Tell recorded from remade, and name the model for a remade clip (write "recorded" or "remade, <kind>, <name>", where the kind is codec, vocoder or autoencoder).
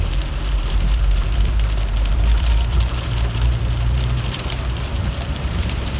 remade, vocoder, BigVGAN v2